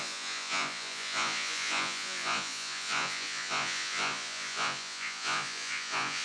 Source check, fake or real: fake